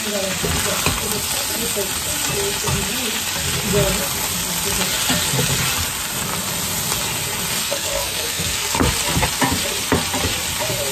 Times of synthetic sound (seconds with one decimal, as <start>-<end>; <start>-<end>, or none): 7.6-8.9